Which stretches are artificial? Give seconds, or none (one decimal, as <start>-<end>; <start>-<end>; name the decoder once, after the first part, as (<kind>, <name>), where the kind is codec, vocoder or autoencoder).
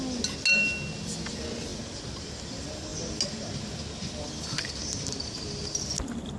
1.7-2.5 (vocoder, BigVGAN v2)